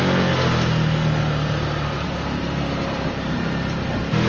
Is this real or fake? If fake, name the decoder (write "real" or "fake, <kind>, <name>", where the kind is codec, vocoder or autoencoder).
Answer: real